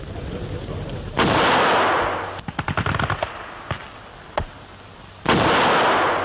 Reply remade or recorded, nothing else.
recorded